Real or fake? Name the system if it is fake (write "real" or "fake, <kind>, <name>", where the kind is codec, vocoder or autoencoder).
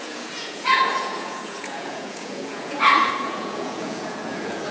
fake, vocoder, Vocos